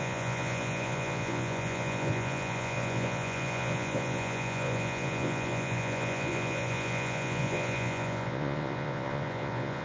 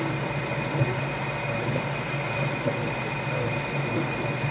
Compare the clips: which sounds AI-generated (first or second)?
first